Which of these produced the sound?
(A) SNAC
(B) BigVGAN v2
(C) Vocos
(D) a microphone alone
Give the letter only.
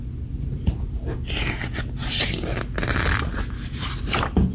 D